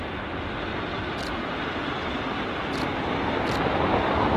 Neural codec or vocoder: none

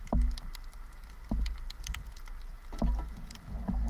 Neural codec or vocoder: none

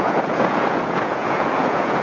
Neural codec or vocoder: vocoder, Vocos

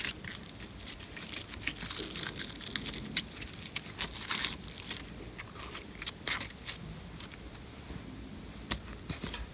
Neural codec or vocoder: none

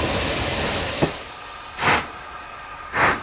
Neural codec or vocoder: none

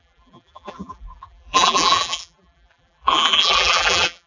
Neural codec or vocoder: vocoder, BigVGAN v2